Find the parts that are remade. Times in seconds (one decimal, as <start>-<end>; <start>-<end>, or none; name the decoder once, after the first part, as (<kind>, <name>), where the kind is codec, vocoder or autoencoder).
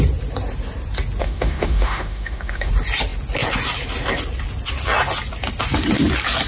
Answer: 1.2-2.7 (autoencoder, DAC-VAE)